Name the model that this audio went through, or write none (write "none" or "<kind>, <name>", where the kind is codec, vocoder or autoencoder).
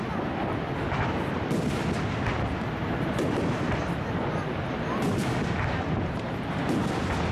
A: none